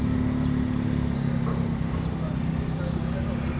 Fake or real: real